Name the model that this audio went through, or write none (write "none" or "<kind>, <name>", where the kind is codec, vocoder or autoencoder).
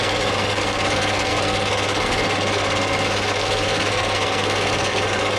codec, SNAC